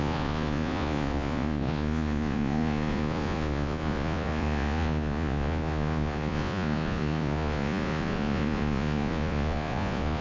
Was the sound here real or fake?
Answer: fake